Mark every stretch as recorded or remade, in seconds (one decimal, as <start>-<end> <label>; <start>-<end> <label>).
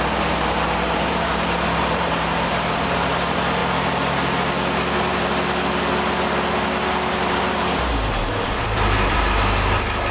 0.0-3.6 remade; 3.6-7.1 recorded; 7.1-10.1 remade